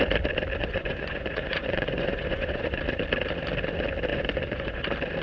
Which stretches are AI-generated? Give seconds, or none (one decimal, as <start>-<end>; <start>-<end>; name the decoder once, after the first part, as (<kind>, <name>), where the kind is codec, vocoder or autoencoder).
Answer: 0.6-2.8 (vocoder, Vocos); 4.1-4.8